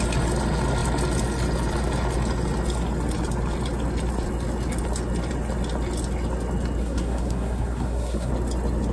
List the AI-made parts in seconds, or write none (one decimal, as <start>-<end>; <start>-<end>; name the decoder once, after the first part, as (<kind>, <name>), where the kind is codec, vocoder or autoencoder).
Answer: 6.8-8.3 (codec, SNAC)